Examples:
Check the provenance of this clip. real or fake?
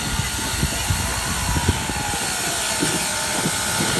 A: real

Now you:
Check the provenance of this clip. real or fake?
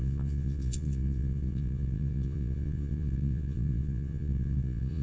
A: fake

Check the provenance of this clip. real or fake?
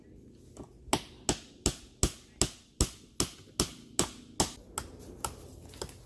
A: real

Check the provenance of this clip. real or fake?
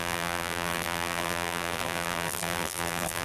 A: fake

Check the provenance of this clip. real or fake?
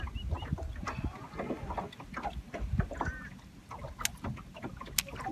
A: real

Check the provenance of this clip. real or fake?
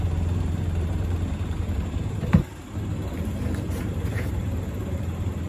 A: fake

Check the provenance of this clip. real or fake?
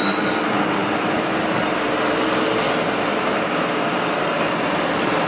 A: real